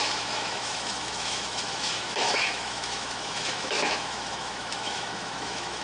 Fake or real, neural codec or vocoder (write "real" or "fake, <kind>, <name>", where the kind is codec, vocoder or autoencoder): fake, autoencoder, DAC-VAE